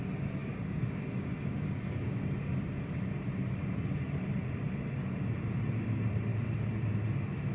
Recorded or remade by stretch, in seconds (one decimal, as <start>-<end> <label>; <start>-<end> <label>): 0.0-0.4 recorded; 0.4-2.2 remade; 2.2-7.5 recorded